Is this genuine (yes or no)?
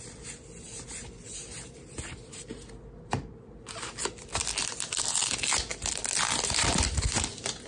yes